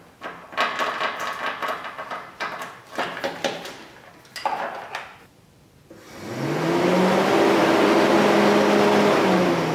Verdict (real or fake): real